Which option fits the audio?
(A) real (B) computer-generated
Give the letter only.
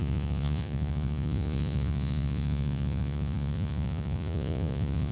B